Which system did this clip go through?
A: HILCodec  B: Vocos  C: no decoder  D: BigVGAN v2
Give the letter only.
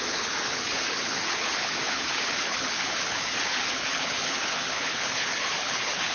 A